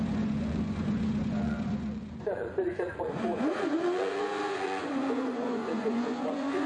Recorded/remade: remade